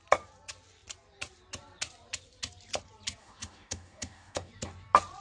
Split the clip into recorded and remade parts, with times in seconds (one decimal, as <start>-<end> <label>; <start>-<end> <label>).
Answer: 0.0-3.2 recorded; 3.2-4.5 remade; 4.5-5.2 recorded